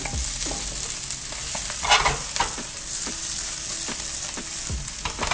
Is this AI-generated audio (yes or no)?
no